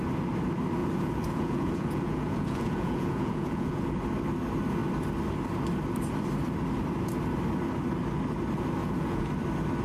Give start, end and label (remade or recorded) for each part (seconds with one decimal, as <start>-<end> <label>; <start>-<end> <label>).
0.0-0.8 recorded; 0.8-3.9 remade; 3.9-8.8 recorded; 8.8-9.3 remade; 9.3-9.8 recorded